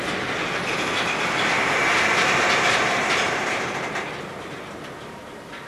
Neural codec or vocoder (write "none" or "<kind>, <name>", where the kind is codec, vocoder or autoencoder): none